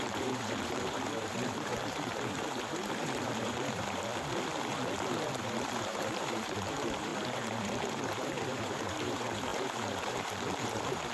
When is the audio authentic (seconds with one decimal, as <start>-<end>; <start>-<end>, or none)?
4.1-5.8